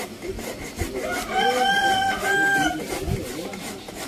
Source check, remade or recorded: recorded